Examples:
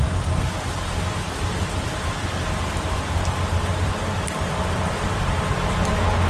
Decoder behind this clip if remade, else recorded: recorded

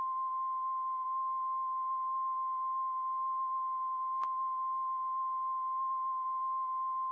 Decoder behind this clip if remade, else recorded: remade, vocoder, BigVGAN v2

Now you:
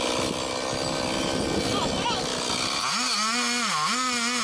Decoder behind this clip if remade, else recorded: recorded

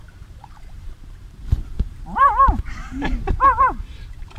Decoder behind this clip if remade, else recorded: remade, vocoder, BigVGAN v2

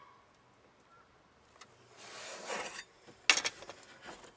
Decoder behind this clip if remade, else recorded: recorded